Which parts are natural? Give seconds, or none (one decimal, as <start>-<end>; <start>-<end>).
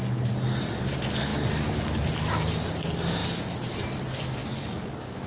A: 0.0-5.3